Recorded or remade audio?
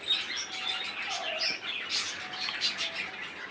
recorded